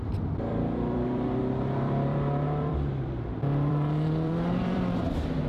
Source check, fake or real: fake